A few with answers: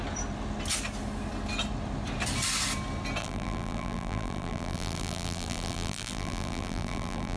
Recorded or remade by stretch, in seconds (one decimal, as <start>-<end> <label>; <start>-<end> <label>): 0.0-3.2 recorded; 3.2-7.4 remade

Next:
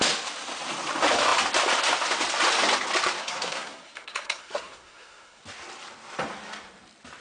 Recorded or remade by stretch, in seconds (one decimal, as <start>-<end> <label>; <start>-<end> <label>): 0.0-3.2 recorded; 3.2-5.4 remade; 5.4-7.2 recorded

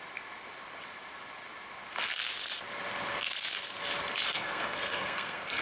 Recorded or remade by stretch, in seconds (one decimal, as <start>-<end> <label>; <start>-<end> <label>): 0.0-4.3 recorded; 4.3-5.6 remade

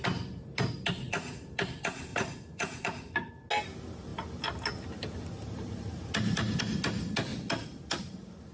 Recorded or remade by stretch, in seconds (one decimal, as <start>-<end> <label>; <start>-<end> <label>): 0.0-1.0 recorded; 1.0-1.5 remade; 1.5-2.1 recorded; 2.1-3.3 remade; 3.3-8.5 recorded